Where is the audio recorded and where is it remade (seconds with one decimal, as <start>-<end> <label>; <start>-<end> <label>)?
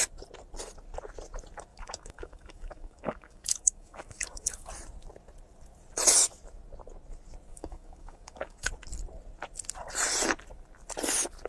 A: 0.0-1.7 recorded; 1.7-4.7 remade; 4.7-7.5 recorded; 7.5-8.7 remade; 8.7-11.5 recorded